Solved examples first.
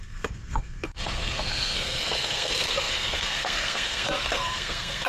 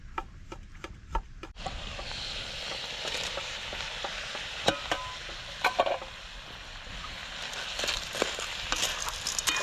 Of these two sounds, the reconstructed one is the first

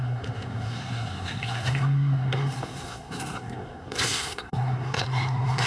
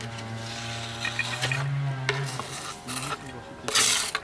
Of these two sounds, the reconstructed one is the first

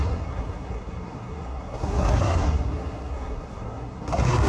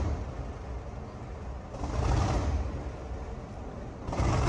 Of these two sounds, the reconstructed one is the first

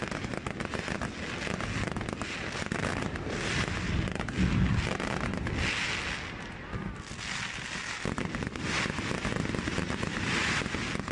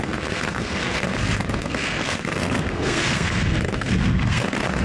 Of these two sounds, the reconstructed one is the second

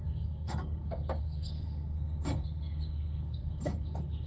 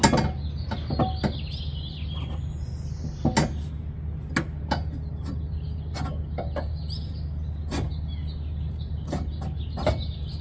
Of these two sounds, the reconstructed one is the first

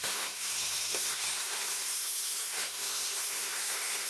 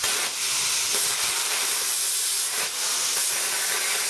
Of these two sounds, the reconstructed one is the first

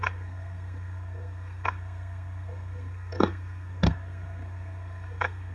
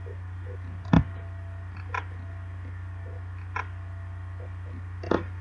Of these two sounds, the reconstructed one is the first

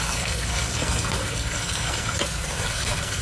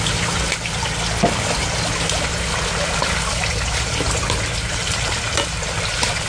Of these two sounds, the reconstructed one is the first